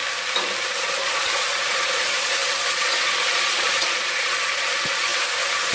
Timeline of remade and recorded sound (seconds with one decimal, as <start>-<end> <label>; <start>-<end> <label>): 0.0-0.6 recorded; 0.6-5.1 remade; 5.1-5.7 recorded

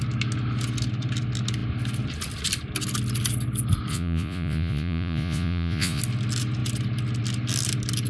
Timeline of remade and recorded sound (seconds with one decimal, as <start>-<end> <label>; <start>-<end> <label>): 0.0-3.9 recorded; 3.9-6.0 remade; 6.0-8.1 recorded

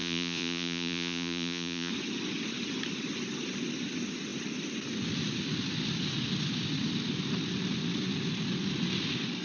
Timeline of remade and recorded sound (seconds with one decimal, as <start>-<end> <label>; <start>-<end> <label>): 0.0-1.9 remade; 1.9-9.4 recorded

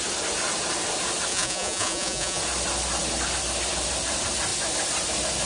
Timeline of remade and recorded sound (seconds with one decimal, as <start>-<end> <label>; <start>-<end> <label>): 0.0-1.3 recorded; 1.3-2.4 remade; 2.4-5.5 recorded

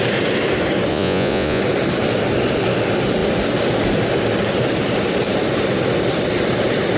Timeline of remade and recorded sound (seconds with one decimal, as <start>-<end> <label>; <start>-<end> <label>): 0.0-0.9 recorded; 0.9-1.6 remade; 1.6-7.0 recorded